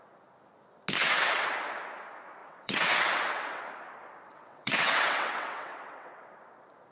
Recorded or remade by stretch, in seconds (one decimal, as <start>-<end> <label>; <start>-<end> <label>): 0.0-1.0 recorded; 1.0-1.6 remade; 1.6-2.4 recorded; 2.4-3.6 remade; 3.6-4.3 recorded; 4.3-6.3 remade; 6.3-6.9 recorded